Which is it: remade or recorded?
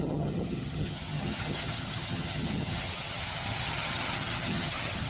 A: remade